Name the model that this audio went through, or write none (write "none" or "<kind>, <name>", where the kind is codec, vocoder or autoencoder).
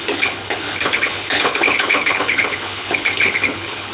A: codec, HILCodec